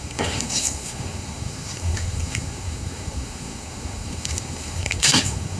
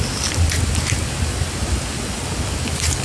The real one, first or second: second